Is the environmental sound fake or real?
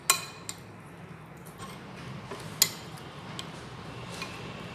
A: real